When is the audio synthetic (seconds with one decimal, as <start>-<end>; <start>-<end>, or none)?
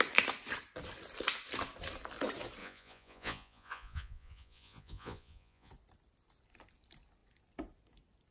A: 2.6-5.7